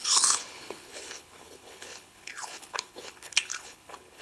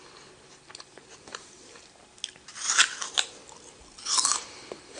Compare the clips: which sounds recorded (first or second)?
second